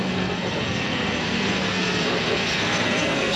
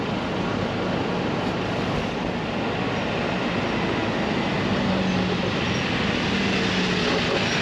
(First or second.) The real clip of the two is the second